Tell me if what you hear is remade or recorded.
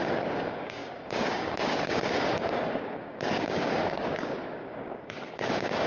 remade